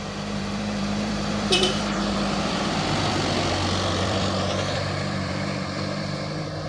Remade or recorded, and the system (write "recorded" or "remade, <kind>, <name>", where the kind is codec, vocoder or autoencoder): remade, vocoder, BigVGAN v2